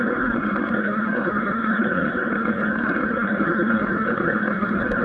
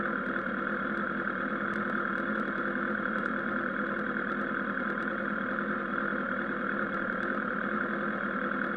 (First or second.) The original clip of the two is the second